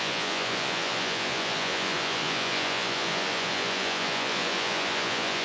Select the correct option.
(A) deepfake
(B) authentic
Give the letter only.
A